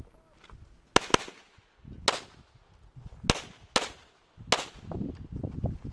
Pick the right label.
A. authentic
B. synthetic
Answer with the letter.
A